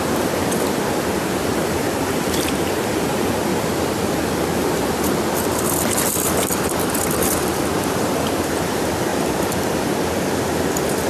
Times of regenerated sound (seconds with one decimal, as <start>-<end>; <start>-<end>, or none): 0.0-9.1